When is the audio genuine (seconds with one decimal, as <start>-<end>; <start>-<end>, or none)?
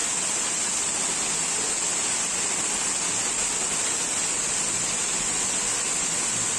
0.0-6.6